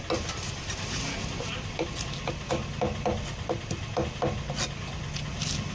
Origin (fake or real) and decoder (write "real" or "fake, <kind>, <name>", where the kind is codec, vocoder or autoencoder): real